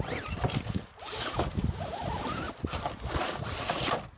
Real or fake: real